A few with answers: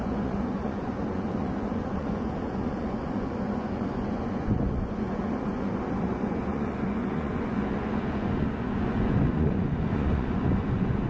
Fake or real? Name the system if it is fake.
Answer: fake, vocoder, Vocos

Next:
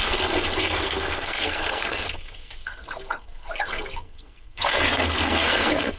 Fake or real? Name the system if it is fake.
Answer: fake, codec, SNAC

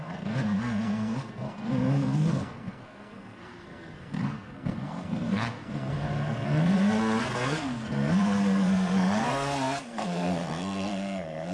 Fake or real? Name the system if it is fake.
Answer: fake, codec, SNAC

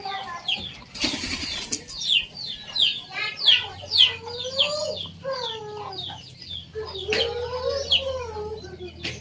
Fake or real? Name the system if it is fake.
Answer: real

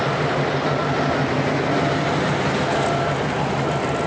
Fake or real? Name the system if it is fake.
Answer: real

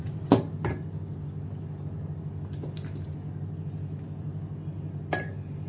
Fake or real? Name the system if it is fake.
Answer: real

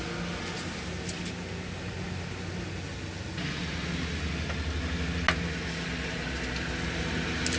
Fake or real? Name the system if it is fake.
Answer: real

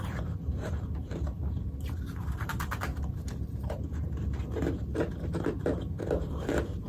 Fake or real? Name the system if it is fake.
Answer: fake, vocoder, BigVGAN v2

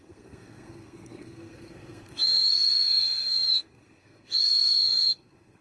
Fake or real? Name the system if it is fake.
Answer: fake, codec, SNAC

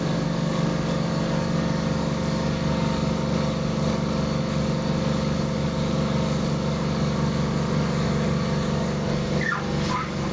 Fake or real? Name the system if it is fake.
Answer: fake, codec, DAC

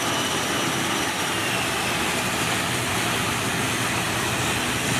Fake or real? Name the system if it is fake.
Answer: real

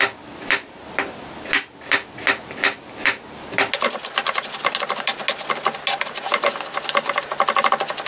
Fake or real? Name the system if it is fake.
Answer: real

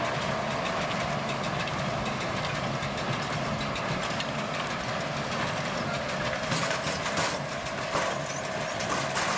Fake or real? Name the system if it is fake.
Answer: real